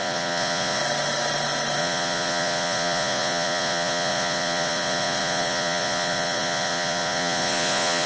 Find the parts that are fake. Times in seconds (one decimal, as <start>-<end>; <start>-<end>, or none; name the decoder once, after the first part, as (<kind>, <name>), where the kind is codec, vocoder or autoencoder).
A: 0.0-0.8 (vocoder, Vocos); 1.8-8.1